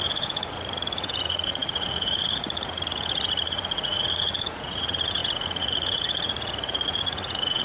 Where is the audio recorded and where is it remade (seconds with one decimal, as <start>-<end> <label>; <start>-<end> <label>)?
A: 0.0-7.6 remade